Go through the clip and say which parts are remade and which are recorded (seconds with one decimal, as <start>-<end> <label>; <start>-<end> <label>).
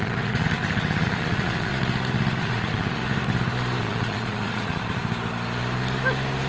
0.0-1.7 remade; 1.7-2.4 recorded; 2.4-3.0 remade; 3.0-3.8 recorded; 3.8-5.0 remade; 5.0-6.5 recorded